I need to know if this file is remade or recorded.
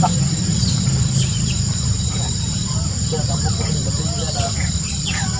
remade